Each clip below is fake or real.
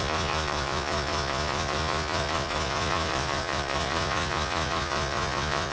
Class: fake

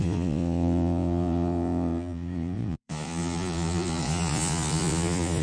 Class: fake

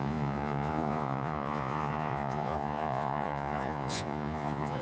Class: fake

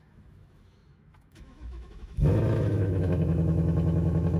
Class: fake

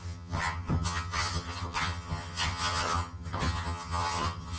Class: fake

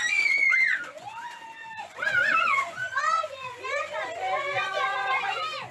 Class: fake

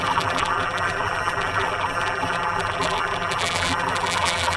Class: fake